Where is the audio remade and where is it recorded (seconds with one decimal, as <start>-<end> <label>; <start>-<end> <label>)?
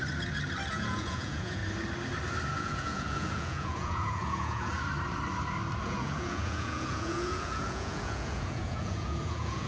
0.0-0.7 recorded; 0.7-1.6 remade; 1.6-2.5 recorded; 2.5-4.7 remade; 4.7-5.8 recorded; 5.8-9.7 remade